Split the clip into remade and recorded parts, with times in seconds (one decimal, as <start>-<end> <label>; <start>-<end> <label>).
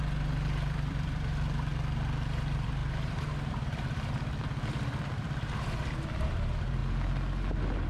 0.0-1.7 remade; 1.7-2.3 recorded; 2.3-6.8 remade; 6.8-7.9 recorded